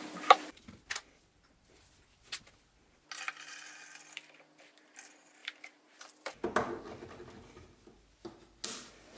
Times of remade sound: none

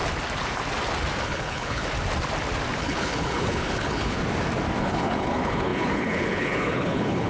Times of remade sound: 1.2-1.8 (codec, HILCodec); 2.8-4.2; 4.8-7.3

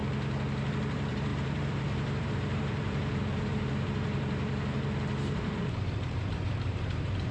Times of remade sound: 0.7-7.3 (vocoder, BigVGAN v2)

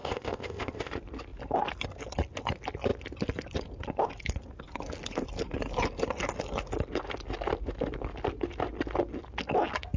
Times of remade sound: 0.0-0.9 (codec, ZipCodec)

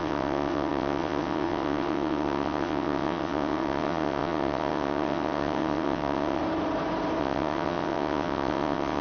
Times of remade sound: 0.0-6.4 (vocoder, WaveNeXt); 7.2-9.0

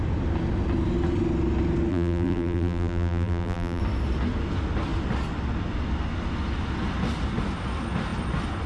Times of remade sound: 1.9-3.8 (vocoder, BigVGAN v2)